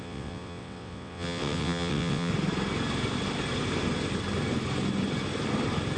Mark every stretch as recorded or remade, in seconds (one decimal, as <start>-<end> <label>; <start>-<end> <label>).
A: 0.0-2.3 remade; 2.3-6.0 recorded